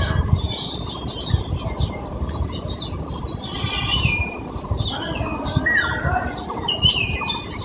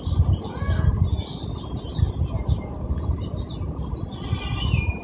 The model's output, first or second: first